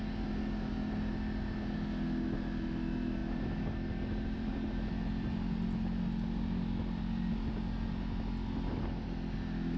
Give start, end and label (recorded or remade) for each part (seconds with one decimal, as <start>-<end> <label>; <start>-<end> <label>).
0.0-3.2 recorded; 3.2-4.7 remade; 4.7-9.8 recorded